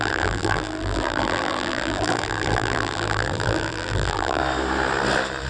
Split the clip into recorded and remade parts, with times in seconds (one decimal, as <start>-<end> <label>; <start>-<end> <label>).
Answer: 0.0-4.4 remade; 4.4-5.5 recorded